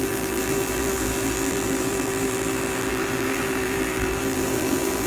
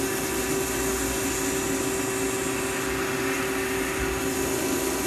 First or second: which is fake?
first